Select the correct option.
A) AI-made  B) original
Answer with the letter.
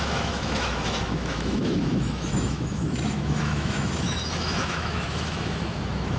A